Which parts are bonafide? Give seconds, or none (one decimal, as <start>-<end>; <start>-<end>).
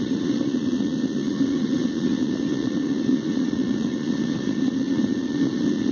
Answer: none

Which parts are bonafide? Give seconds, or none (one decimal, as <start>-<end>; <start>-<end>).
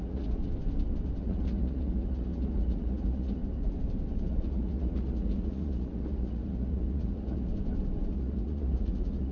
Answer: 0.4-1.2; 3.4-4.3; 7.5-8.1